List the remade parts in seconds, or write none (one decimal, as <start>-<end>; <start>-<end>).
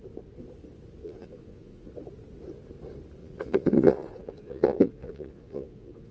1.0-1.9; 3.2-6.1